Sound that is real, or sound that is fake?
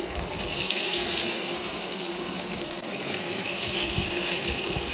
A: fake